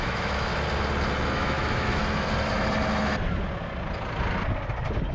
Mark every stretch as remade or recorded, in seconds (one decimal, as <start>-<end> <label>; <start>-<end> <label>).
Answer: 0.0-0.5 remade; 0.5-1.3 recorded; 1.3-2.0 remade; 2.0-5.1 recorded